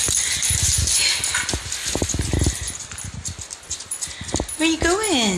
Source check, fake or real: real